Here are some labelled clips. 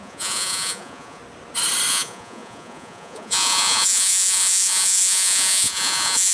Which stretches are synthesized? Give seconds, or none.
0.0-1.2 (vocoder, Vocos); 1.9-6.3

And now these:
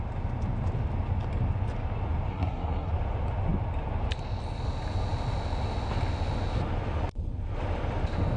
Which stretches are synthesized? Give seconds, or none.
2.3-2.9 (codec, SNAC)

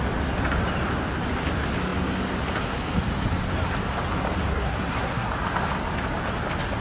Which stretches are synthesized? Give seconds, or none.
4.5-5.3 (codec, SNAC)

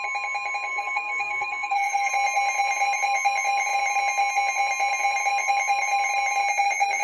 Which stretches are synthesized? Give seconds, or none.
0.7-2.1 (codec, SNAC)